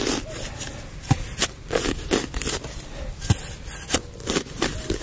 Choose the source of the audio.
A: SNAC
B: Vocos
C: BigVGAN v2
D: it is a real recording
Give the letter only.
D